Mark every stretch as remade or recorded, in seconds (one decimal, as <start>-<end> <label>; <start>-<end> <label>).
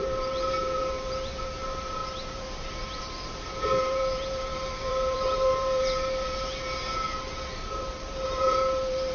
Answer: 0.0-9.1 remade